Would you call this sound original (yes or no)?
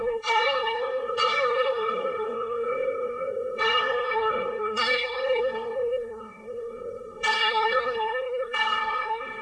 no